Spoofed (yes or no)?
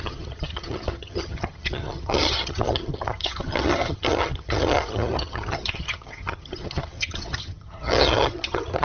yes